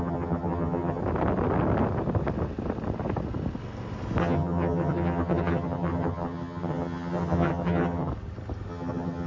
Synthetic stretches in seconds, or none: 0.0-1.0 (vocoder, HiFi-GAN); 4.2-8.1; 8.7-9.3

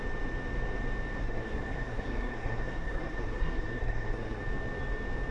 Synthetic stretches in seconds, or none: 1.2-4.4 (codec, SNAC)

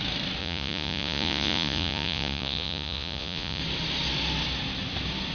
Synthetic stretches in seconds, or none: 0.4-3.6 (vocoder, Vocos)

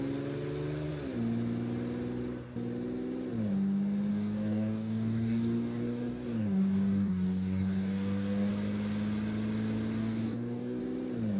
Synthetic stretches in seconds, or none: 4.1-8.5 (codec, DAC); 10.0-10.8

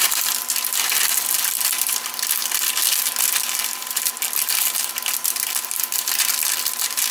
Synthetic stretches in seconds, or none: none

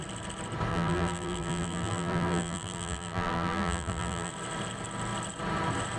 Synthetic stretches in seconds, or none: 0.7-4.3 (vocoder, BigVGAN v2)